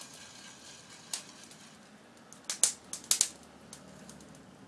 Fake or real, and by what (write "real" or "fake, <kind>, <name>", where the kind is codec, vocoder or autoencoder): real